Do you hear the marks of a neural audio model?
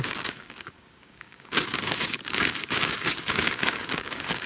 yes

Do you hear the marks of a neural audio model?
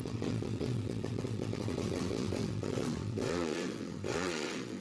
yes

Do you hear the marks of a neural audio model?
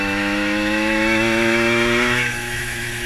yes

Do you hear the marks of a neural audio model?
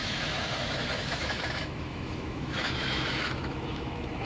yes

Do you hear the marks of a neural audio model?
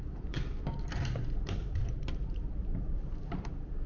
yes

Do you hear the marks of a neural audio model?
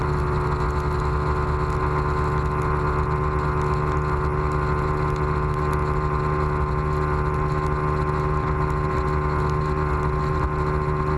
no